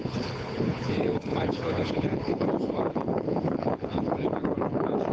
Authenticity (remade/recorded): remade